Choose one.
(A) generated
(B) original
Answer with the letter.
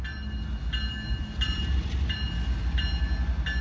B